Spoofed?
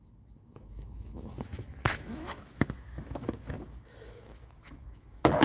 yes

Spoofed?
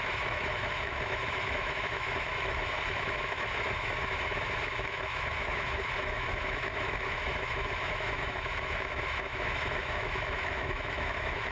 yes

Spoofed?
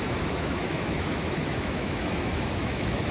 yes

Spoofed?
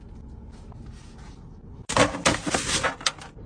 no